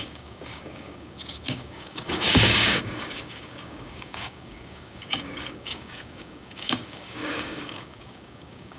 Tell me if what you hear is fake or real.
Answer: fake